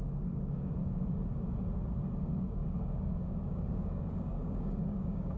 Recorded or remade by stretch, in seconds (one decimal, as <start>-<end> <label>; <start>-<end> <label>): 0.0-0.8 remade; 0.8-2.2 recorded; 2.2-5.4 remade